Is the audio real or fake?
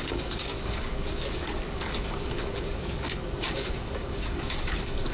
fake